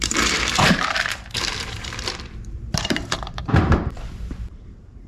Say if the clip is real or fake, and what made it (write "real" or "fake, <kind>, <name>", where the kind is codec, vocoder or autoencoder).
fake, vocoder, BigVGAN v2